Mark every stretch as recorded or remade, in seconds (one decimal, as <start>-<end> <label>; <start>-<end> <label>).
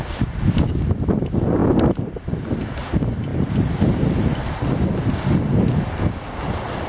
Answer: 0.0-6.9 recorded